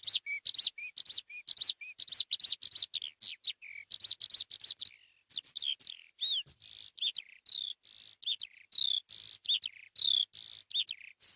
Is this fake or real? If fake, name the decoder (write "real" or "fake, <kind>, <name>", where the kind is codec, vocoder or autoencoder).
real